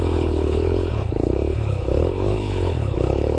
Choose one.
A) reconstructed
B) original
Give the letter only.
A